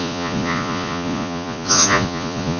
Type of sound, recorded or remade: remade